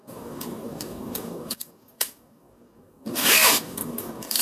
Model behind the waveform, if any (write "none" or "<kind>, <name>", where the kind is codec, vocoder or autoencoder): codec, DAC